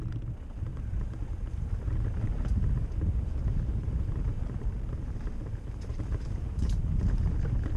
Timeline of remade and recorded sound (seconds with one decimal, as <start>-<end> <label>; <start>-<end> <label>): 0.0-0.7 recorded; 0.7-2.0 remade; 2.0-3.5 recorded; 3.5-6.8 remade; 6.8-7.8 recorded